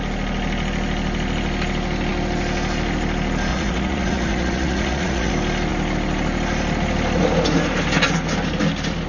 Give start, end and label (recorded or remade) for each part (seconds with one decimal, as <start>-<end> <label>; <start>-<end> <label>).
0.0-3.5 recorded; 3.5-5.3 remade; 5.3-9.1 recorded